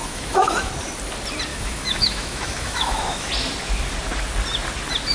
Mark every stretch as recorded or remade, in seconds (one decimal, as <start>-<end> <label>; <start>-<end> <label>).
0.0-0.7 remade; 0.7-1.5 recorded; 1.5-3.3 remade; 3.3-5.1 recorded